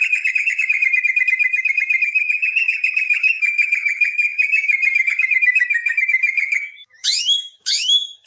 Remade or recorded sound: remade